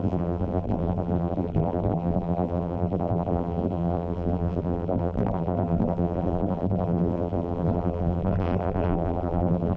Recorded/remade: remade